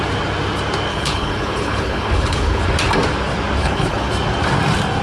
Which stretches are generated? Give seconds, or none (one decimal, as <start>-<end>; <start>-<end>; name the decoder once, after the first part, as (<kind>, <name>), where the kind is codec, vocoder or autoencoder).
0.9-2.6 (codec, HILCodec); 3.6-4.1